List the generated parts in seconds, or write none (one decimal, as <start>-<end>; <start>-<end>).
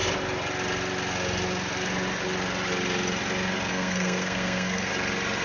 3.7-4.9